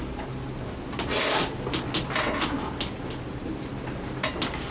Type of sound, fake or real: real